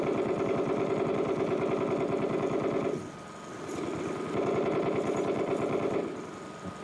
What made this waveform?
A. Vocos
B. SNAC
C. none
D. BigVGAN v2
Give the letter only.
C